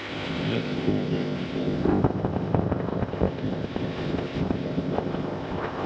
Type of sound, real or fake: fake